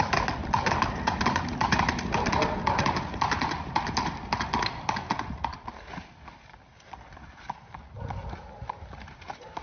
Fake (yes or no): no